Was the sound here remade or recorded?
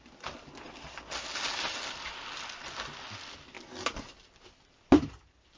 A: recorded